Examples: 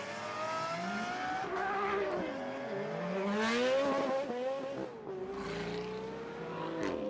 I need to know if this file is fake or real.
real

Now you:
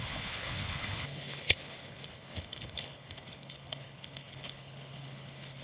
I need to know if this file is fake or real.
fake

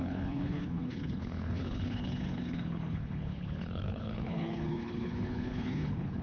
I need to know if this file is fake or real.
fake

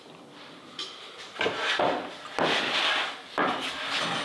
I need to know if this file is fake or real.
real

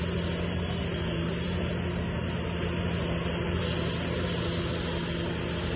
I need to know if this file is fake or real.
real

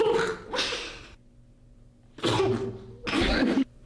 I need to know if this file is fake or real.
real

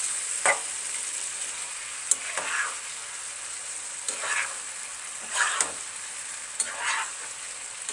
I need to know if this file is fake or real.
real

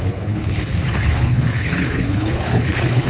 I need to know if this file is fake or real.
fake